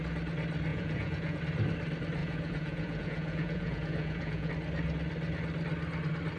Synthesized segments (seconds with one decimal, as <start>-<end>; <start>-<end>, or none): 0.7-1.4; 2.2-4.5